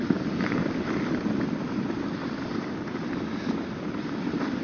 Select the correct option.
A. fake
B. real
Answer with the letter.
B